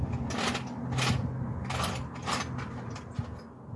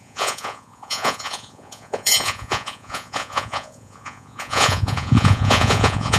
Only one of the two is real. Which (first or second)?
first